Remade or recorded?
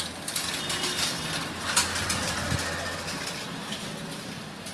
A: recorded